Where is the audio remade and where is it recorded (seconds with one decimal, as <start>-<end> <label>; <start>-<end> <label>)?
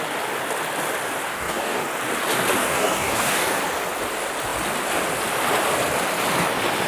0.0-1.2 recorded; 1.2-1.8 remade; 1.8-2.6 recorded; 2.6-3.6 remade; 3.6-6.9 recorded